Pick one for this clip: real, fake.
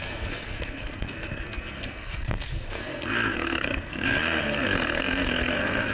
fake